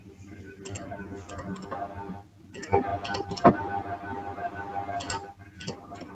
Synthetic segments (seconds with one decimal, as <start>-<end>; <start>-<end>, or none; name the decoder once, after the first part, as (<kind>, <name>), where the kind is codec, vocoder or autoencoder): 0.0-1.0 (vocoder, BigVGAN v2)